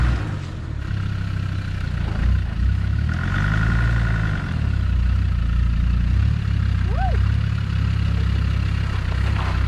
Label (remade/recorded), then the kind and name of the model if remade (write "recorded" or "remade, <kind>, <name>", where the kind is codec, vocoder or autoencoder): recorded